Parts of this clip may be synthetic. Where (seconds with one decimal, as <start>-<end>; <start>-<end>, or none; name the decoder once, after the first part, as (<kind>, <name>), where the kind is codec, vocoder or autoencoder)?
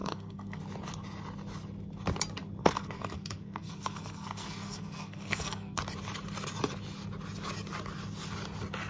0.0-0.6 (codec, SNAC); 2.6-5.8